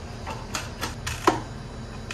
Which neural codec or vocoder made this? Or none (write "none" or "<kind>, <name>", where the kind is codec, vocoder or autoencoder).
none